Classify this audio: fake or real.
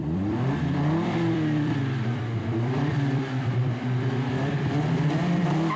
fake